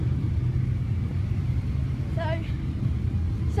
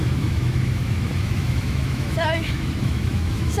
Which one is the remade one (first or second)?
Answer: second